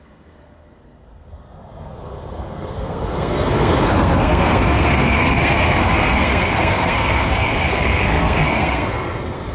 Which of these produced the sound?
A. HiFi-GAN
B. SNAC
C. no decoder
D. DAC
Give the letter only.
B